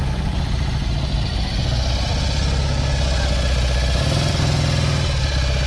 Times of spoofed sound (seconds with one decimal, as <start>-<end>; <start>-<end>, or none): none